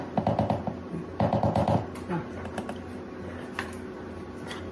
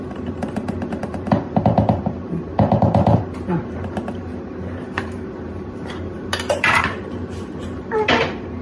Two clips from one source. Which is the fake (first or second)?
second